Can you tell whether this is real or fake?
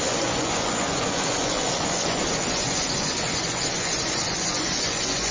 fake